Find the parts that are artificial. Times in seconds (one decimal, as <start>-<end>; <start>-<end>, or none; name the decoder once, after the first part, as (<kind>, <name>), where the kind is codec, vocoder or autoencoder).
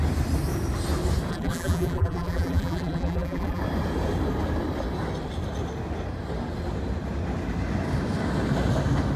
1.3-3.6 (vocoder, BigVGAN v2)